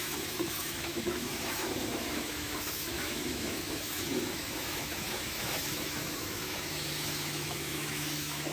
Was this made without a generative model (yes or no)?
no